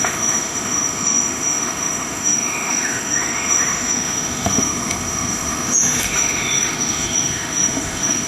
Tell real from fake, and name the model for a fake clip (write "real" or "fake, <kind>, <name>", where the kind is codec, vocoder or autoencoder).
fake, autoencoder, DAC-VAE